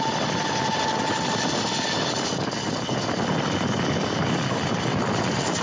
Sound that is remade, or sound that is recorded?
recorded